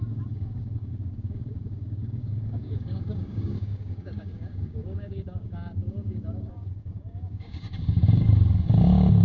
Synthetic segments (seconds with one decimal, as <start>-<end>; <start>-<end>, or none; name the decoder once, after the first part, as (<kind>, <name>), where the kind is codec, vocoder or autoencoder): 0.0-9.2 (codec, DAC)